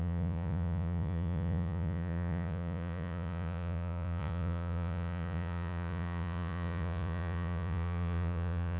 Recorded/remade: remade